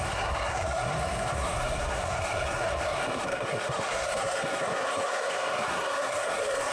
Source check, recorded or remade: remade